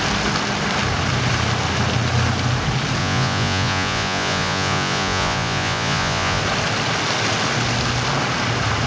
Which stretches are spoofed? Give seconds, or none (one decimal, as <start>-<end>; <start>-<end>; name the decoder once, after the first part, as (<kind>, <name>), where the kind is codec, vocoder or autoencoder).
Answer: 3.0-6.4 (vocoder, Vocos)

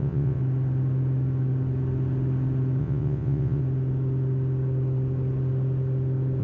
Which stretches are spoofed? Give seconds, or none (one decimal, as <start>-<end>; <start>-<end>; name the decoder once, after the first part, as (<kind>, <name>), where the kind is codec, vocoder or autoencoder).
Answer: 0.0-0.4 (vocoder, WaveNeXt); 2.8-3.6

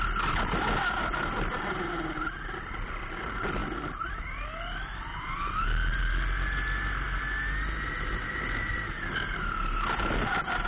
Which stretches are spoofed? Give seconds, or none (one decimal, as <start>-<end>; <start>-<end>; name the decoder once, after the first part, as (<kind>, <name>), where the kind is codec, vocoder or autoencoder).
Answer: none